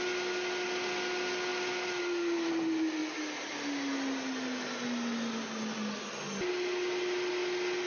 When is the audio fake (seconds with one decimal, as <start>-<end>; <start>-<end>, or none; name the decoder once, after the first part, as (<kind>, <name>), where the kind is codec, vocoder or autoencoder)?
none

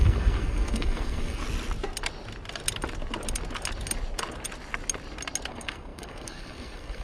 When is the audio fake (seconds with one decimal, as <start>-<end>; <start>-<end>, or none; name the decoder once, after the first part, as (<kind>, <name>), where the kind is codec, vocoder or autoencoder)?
0.0-1.4 (codec, SNAC); 5.5-7.0

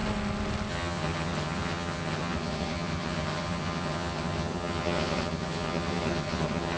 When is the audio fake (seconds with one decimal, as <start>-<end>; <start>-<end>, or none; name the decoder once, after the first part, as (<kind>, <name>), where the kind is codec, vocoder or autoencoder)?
0.7-6.8 (vocoder, HiFi-GAN)

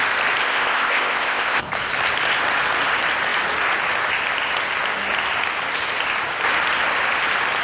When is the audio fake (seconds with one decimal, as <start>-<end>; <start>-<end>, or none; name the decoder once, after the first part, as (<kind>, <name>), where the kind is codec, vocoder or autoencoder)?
0.4-1.7 (codec, ZipCodec)

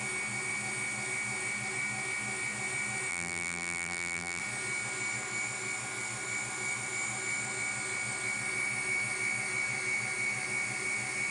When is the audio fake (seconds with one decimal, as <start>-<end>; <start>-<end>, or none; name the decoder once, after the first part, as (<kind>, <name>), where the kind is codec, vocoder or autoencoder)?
3.1-4.4 (vocoder, BigVGAN v2)

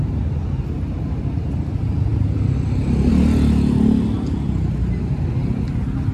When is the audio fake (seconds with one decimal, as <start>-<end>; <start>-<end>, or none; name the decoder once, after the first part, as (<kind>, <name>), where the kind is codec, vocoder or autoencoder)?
none

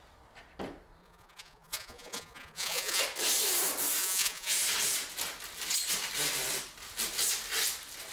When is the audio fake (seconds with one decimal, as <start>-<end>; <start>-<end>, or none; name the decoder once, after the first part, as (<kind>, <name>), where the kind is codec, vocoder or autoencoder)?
1.0-3.0 (vocoder, Vocos); 4.0-4.5

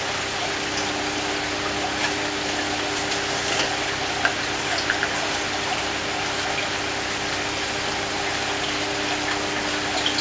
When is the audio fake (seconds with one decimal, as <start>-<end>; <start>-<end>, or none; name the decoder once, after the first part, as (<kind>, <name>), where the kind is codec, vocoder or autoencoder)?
none